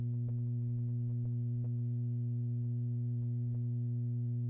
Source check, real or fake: fake